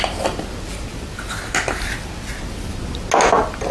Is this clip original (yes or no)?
yes